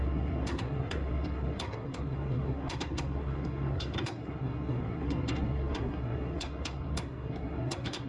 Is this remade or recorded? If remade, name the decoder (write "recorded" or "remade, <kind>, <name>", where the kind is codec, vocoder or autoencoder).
remade, codec, SNAC